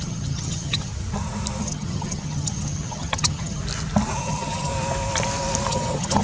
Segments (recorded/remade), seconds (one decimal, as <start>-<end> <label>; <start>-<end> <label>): 0.0-0.9 remade; 0.9-1.6 recorded; 1.6-3.6 remade; 3.6-4.2 recorded; 4.2-4.7 remade; 4.7-5.7 recorded; 5.7-6.2 remade